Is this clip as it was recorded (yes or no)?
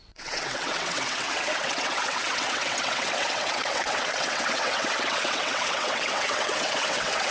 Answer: no